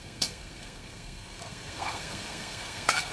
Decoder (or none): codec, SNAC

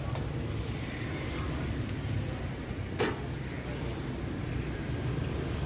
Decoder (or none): none